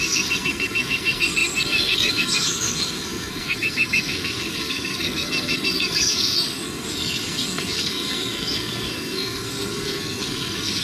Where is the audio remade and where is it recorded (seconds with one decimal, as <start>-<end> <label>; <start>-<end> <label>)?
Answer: 0.0-10.8 remade